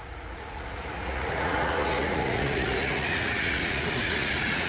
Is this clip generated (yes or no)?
yes